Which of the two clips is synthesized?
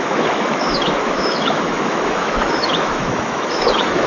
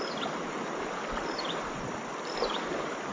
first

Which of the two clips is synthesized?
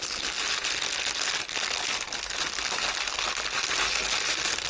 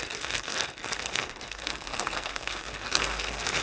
second